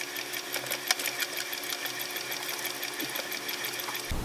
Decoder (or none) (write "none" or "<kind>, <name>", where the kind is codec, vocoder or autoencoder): none